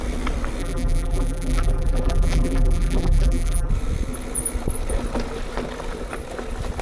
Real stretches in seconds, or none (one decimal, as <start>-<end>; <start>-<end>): 0.0-0.6; 3.7-6.8